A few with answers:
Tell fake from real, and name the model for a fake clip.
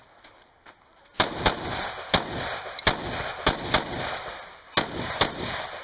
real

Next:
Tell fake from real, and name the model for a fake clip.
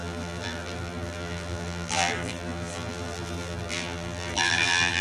fake, vocoder, BigVGAN v2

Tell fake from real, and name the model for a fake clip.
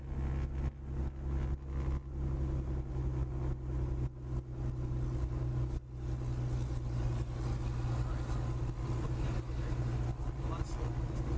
real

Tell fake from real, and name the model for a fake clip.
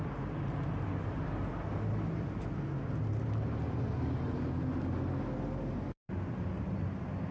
real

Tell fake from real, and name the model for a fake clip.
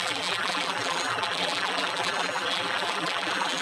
fake, vocoder, BigVGAN v2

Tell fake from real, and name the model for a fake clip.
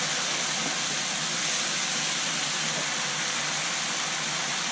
real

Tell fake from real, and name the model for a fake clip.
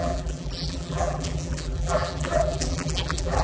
fake, vocoder, BigVGAN v2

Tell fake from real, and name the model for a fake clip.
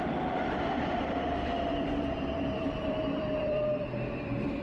fake, vocoder, BigVGAN v2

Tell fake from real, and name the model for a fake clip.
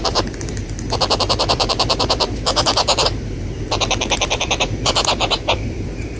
fake, vocoder, BigVGAN v2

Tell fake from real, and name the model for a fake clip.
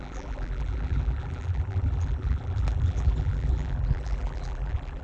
fake, vocoder, BigVGAN v2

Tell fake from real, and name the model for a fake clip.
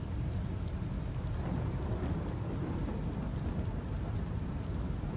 real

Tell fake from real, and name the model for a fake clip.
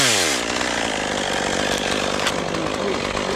real